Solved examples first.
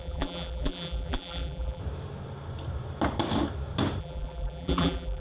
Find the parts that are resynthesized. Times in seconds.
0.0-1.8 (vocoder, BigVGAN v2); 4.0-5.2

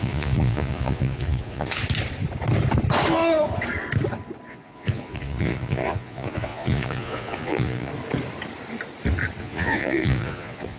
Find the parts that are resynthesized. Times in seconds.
0.0-1.8 (vocoder, Vocos); 4.5-7.9; 9.4-10.8

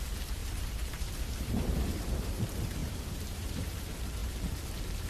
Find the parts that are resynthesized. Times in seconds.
0.4-2.4 (vocoder, BigVGAN v2); 2.8-3.8